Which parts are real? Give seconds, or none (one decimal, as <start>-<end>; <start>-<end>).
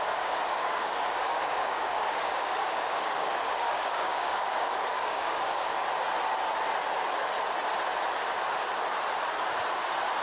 5.7-10.2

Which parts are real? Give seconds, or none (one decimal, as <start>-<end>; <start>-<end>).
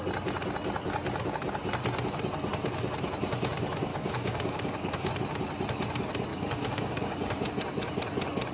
0.0-3.9; 5.1-6.3; 7.5-8.5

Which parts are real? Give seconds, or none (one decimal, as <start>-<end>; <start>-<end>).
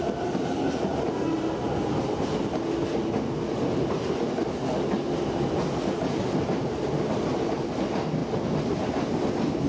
0.0-9.7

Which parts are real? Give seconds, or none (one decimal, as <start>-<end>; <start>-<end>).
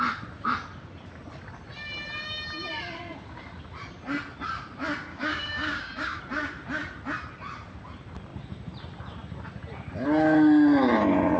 0.0-5.1; 6.2-11.4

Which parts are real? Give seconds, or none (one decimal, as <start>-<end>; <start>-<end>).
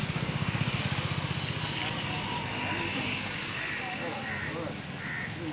0.8-2.9; 3.6-5.5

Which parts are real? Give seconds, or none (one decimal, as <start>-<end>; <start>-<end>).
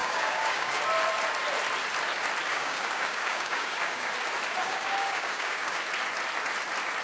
0.8-2.5; 4.1-4.6; 5.8-7.0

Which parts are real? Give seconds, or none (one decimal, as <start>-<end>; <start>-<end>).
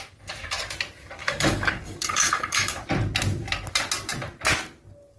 0.0-1.2; 2.8-5.2